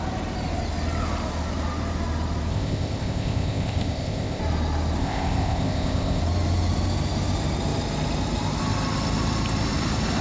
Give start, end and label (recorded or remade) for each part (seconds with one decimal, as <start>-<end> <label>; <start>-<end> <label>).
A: 0.0-2.5 recorded; 2.5-4.4 remade; 4.4-5.0 recorded; 5.0-6.2 remade; 6.2-10.2 recorded